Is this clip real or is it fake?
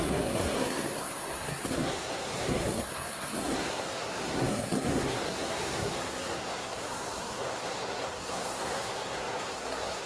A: fake